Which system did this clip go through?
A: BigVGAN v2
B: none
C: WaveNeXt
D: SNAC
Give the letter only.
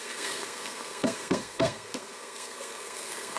D